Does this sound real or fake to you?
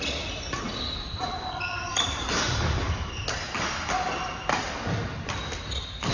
real